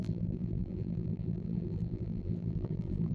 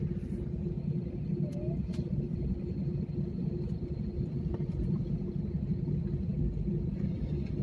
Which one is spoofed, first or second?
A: first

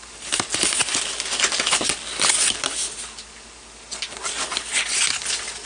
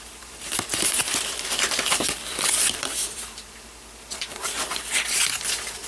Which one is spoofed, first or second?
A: second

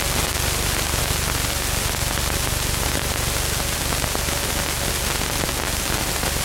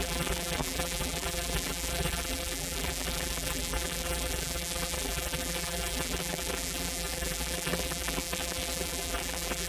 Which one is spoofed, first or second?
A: second